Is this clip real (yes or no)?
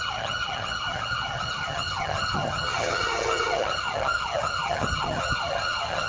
no